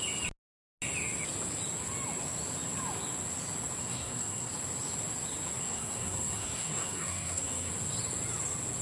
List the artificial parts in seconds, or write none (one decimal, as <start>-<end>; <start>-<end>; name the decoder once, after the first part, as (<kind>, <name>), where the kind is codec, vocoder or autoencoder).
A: 3.8-4.5 (codec, SNAC); 5.6-7.7